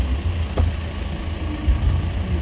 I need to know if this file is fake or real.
real